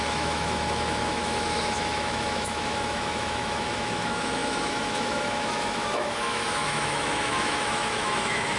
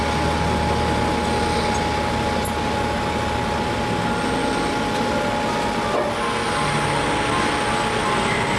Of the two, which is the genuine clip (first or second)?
second